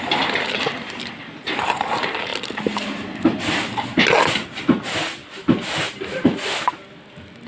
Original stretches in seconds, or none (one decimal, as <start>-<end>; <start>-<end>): 0.0-7.5